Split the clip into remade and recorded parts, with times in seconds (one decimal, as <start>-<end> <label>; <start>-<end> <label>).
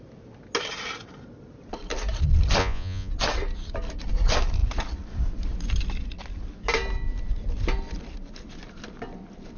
0.0-2.6 recorded; 2.6-3.1 remade; 3.1-9.6 recorded